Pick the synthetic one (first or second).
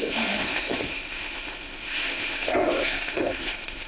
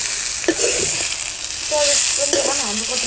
first